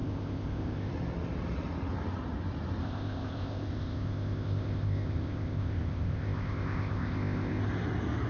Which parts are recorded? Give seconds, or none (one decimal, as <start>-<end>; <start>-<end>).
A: 0.9-2.8; 7.6-8.3